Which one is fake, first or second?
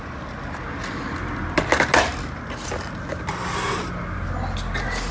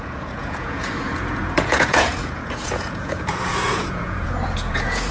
second